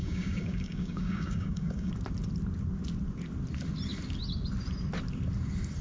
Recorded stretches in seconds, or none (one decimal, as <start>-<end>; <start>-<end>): 1.9-5.8